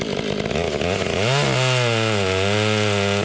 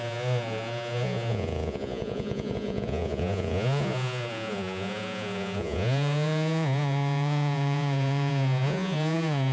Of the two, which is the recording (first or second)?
first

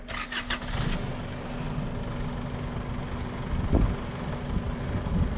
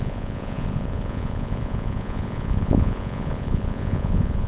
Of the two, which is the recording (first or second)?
first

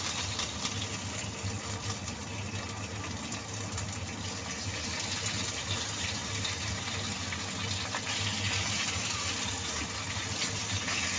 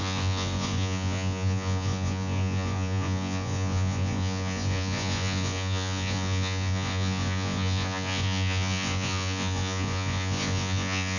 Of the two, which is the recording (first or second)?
first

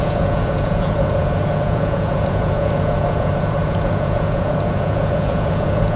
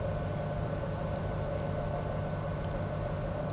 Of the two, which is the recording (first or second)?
second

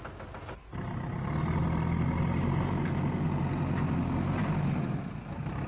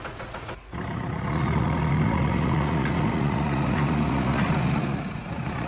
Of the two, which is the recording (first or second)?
first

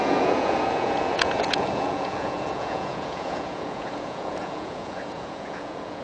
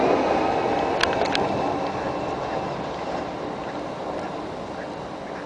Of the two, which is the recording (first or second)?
second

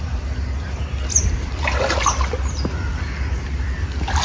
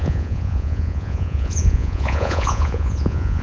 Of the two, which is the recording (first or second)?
first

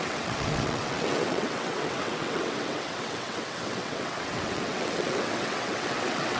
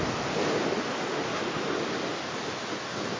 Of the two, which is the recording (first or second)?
second